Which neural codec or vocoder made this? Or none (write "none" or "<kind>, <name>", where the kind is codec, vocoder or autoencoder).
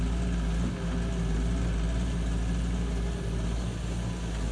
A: none